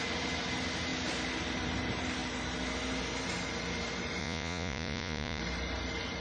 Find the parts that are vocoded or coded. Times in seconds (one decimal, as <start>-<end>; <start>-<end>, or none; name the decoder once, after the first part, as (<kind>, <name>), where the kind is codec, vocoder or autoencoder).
4.2-5.4 (vocoder, Vocos)